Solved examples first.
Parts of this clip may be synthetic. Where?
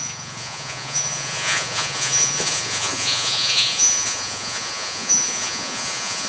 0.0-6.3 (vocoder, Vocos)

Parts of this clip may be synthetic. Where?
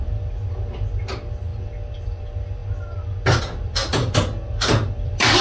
0.0-1.5 (vocoder, BigVGAN v2); 2.2-2.6; 3.4-3.8; 4.5-5.4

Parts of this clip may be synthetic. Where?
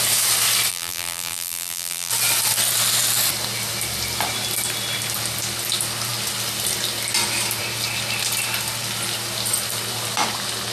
0.7-2.1 (vocoder, BigVGAN v2)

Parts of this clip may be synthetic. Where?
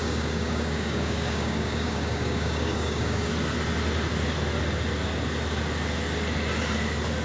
0.0-3.3 (codec, DAC)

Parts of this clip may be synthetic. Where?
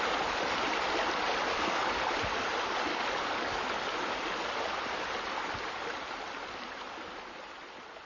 1.5-2.0 (codec, DAC); 2.9-3.6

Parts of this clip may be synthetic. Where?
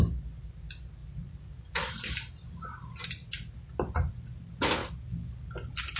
none